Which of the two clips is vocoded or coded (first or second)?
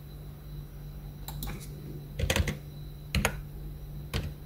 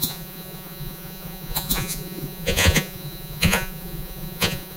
second